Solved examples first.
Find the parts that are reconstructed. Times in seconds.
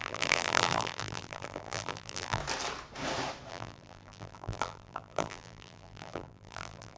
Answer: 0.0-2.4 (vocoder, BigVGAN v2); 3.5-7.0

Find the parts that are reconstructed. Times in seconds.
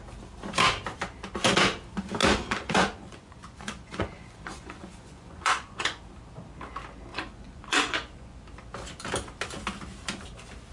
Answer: 2.2-6.0 (vocoder, Vocos); 7.1-8.4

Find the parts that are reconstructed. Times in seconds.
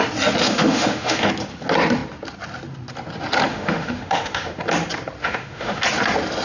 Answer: 0.4-1.3 (autoencoder, DAC-VAE); 3.5-4.6; 5.2-5.8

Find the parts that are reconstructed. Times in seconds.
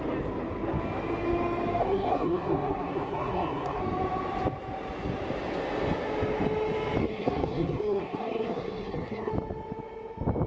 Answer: 1.8-3.8 (codec, SNAC); 7.0-9.3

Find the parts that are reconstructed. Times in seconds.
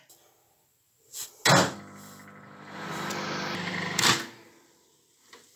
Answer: 1.5-4.9 (vocoder, BigVGAN v2)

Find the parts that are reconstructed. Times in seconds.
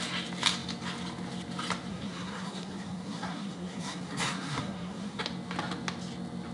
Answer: 1.9-5.2 (codec, SNAC)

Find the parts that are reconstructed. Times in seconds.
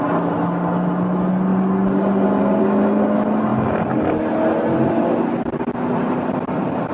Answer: none